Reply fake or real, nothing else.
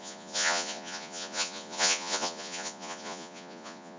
fake